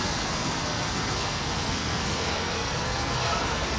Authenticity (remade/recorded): remade